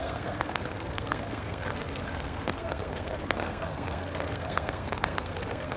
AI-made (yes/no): yes